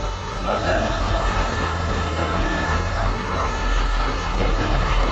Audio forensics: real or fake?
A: fake